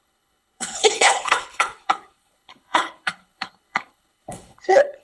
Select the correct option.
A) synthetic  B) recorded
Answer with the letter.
A